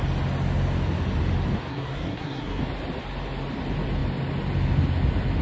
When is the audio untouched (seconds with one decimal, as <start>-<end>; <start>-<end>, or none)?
0.0-1.7; 2.6-5.4

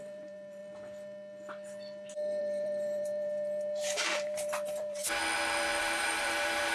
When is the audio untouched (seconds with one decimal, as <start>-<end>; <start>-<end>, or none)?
0.6-2.4; 5.0-5.8

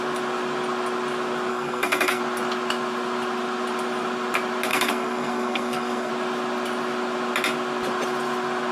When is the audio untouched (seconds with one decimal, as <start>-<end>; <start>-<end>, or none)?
0.0-1.5; 2.2-4.7; 6.1-8.7

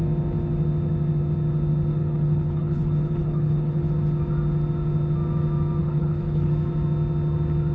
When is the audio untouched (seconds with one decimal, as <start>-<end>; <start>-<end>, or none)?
0.0-1.9; 3.9-5.8; 6.5-7.7

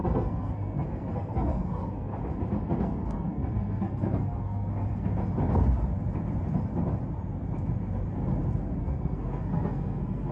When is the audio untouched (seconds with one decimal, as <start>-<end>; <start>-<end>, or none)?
2.1-2.7; 5.1-8.8

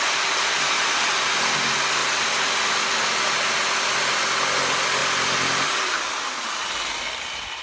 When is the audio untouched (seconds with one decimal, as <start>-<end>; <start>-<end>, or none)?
0.0-7.6

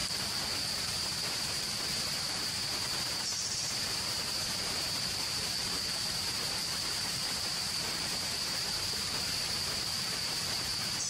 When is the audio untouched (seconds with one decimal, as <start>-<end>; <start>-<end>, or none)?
0.0-1.3

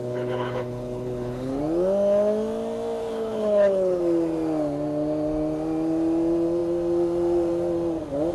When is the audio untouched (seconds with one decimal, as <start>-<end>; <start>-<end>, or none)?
1.6-3.0; 4.0-8.3